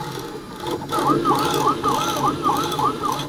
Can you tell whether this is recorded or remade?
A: recorded